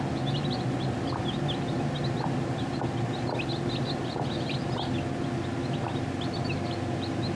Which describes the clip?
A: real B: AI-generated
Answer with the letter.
A